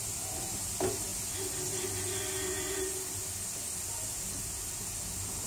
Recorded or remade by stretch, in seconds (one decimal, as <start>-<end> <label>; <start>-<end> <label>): 0.0-5.5 recorded